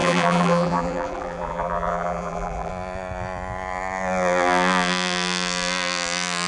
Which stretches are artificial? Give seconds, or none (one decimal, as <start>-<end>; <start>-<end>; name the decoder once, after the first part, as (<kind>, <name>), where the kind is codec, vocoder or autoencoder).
0.0-2.7 (vocoder, BigVGAN v2)